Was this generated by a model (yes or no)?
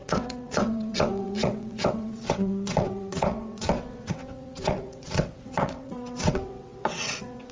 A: yes